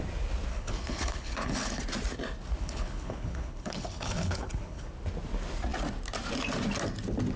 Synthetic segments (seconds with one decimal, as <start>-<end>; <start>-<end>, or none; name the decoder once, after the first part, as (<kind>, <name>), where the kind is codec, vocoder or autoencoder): 0.5-1.8 (codec, HILCodec); 2.6-4.9